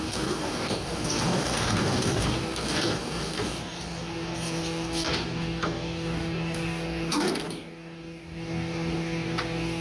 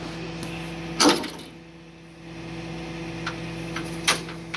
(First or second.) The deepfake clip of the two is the first